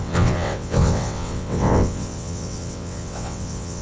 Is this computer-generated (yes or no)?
yes